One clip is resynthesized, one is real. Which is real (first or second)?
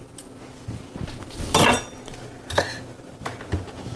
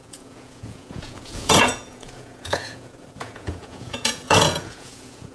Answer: first